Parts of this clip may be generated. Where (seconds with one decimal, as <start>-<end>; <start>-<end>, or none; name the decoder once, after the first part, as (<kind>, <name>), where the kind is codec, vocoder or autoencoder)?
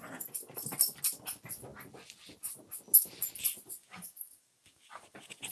3.8-5.5 (codec, DAC)